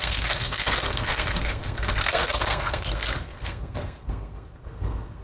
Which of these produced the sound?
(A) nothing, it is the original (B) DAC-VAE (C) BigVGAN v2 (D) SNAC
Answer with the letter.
D